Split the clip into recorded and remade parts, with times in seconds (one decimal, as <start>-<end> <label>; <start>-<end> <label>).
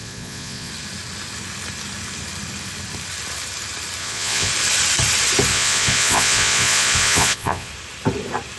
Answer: 0.0-0.7 remade; 0.7-4.0 recorded; 4.0-4.5 remade; 4.5-5.5 recorded; 5.5-7.7 remade; 7.7-8.6 recorded